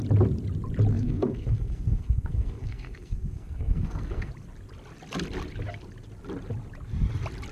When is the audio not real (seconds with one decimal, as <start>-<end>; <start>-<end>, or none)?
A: 0.9-4.3